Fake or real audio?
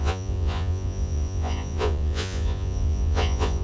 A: fake